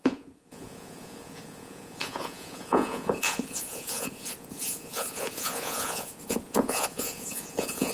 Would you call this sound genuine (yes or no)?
no